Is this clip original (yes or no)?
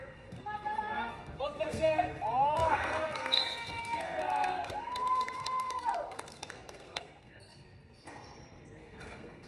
no